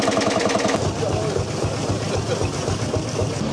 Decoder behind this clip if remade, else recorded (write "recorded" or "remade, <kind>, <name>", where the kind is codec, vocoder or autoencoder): recorded